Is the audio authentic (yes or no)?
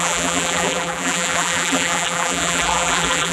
no